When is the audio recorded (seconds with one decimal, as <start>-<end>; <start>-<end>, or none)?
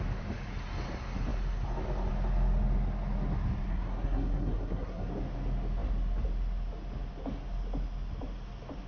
0.0-3.7; 5.1-8.9